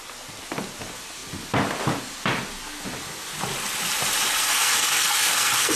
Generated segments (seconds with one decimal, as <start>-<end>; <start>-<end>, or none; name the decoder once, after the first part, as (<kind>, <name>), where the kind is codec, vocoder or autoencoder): 4.4-5.8 (codec, SNAC)